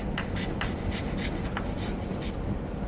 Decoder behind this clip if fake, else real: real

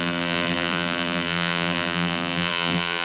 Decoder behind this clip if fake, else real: fake, vocoder, BigVGAN v2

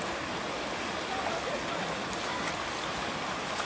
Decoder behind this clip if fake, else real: real